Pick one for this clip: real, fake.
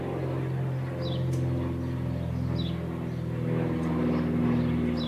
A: real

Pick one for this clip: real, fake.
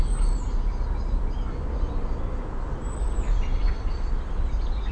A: real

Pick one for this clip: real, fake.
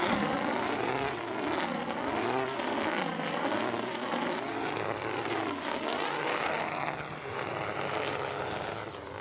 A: real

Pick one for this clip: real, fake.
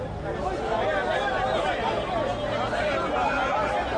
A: real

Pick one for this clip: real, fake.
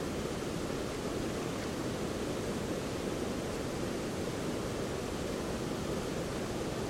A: real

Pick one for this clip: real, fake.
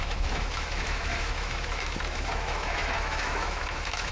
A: fake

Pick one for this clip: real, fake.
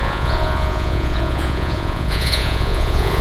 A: fake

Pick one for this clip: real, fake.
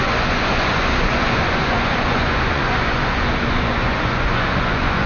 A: fake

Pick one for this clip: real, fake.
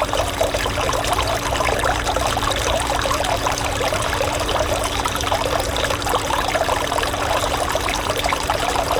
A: fake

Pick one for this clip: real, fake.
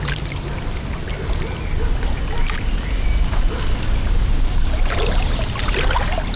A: real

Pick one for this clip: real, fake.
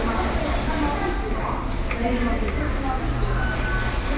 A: real